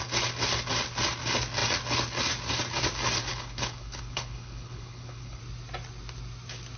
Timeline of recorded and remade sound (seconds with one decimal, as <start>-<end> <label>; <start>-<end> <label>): 0.0-3.3 recorded; 3.3-5.4 remade; 5.4-6.8 recorded